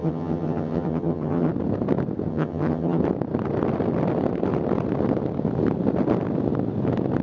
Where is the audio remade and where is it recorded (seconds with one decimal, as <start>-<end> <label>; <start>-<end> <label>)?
0.0-1.5 remade; 1.5-2.3 recorded; 2.3-3.0 remade; 3.0-7.2 recorded